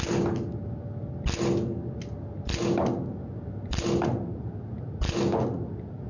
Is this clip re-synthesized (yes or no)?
no